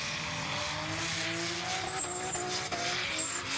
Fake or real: real